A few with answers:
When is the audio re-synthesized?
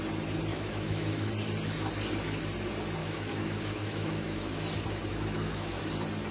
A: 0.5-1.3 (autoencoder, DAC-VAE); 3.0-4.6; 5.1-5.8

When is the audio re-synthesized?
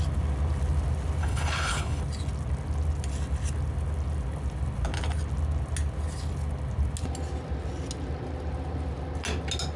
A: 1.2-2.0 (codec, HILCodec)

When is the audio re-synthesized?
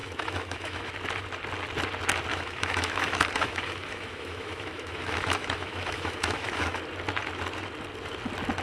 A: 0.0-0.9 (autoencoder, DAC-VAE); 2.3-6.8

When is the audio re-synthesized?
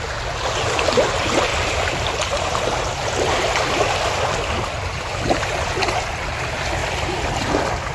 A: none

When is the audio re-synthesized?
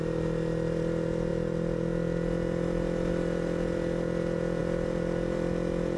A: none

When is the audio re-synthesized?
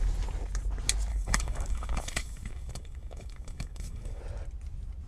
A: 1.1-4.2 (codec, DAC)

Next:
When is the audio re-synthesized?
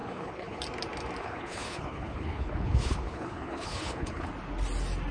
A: 0.0-0.6 (codec, HILCodec); 1.2-4.3